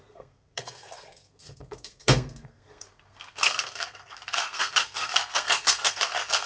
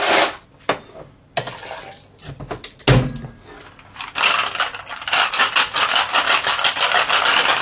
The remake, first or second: first